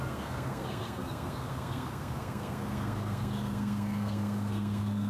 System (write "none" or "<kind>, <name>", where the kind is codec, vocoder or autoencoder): codec, SNAC